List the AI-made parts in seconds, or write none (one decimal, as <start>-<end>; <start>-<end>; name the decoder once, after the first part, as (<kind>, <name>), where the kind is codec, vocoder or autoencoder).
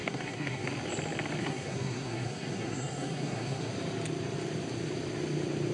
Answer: 0.0-0.7 (codec, SNAC); 1.4-3.7